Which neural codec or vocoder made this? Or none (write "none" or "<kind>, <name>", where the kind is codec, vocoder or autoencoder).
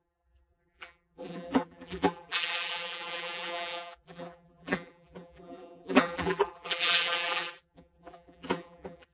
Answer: vocoder, BigVGAN v2